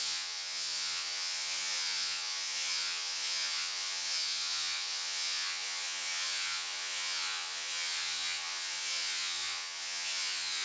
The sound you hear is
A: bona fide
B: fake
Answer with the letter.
B